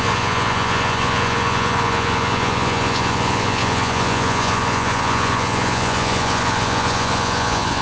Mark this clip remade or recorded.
remade